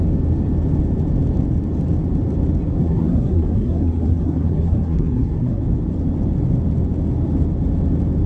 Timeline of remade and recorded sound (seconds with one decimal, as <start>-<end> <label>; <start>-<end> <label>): 0.0-2.8 recorded; 2.8-5.6 remade; 5.6-8.3 recorded